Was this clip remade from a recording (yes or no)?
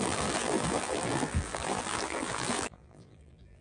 yes